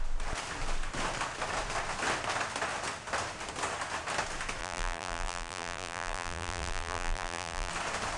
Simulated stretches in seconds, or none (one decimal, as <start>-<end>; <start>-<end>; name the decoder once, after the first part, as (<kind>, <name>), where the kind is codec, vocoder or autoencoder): 4.6-7.7 (vocoder, BigVGAN v2)